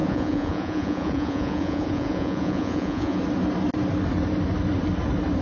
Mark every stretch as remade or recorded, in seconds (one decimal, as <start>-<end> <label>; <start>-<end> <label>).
0.0-3.2 remade; 3.2-5.4 recorded